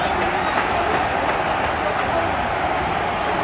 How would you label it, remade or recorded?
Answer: recorded